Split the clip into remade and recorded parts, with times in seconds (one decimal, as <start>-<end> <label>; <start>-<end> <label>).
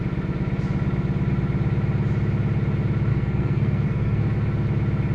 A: 0.0-3.1 recorded; 3.1-4.2 remade; 4.2-5.1 recorded